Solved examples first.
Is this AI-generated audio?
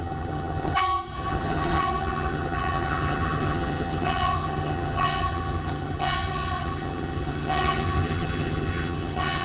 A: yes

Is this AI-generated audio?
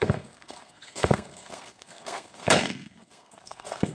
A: yes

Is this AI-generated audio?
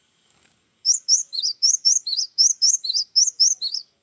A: yes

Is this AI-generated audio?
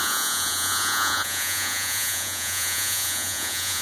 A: yes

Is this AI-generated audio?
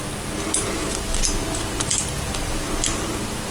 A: no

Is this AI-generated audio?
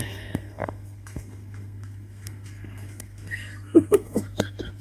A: yes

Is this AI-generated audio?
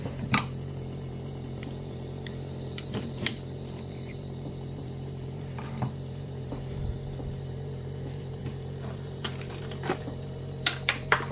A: yes